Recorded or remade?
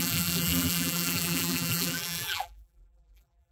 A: remade